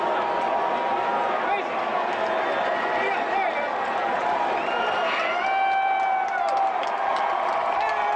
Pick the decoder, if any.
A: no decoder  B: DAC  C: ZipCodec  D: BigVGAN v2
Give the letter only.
A